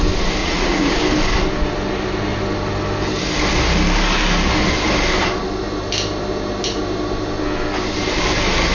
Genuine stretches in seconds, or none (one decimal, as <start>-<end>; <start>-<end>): 0.0-0.4; 0.9-8.7